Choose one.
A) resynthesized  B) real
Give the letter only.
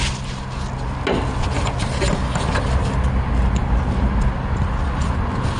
B